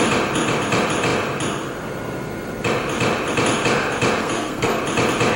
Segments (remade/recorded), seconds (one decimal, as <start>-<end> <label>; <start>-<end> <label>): 0.0-4.2 recorded; 4.2-4.8 remade; 4.8-5.4 recorded

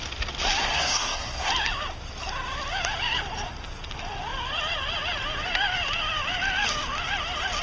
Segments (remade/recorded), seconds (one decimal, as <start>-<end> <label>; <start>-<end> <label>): 0.0-0.6 recorded; 0.6-1.5 remade; 1.5-7.6 recorded

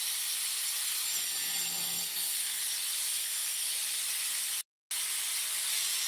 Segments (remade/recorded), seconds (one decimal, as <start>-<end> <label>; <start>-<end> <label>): 0.0-2.0 recorded; 2.0-2.6 remade; 2.6-3.1 recorded; 3.1-3.7 remade; 3.7-6.1 recorded

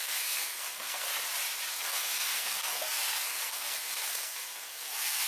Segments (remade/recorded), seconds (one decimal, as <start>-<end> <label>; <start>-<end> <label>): 0.0-1.1 remade; 1.1-1.7 recorded; 1.7-5.3 remade

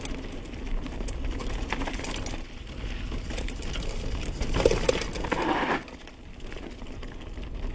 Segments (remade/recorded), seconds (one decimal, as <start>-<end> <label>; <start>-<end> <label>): 0.0-7.7 recorded

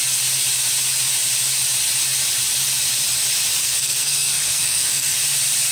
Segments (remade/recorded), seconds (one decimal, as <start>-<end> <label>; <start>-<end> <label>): 0.0-3.6 recorded; 3.6-5.2 remade; 5.2-5.7 recorded

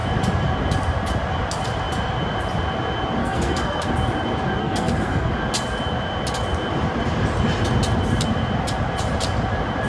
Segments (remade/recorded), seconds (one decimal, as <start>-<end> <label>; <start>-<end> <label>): 0.0-3.2 recorded; 3.2-3.9 remade; 3.9-4.6 recorded; 4.6-5.3 remade; 5.3-9.9 recorded

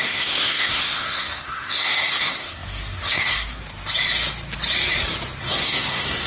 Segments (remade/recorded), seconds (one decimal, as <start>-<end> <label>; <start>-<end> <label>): 0.0-3.6 remade; 3.6-5.4 recorded; 5.4-6.3 remade